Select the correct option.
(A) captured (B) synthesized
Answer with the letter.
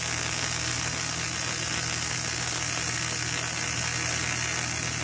A